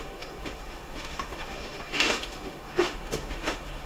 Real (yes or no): no